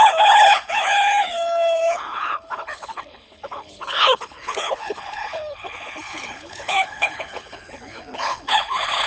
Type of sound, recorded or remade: remade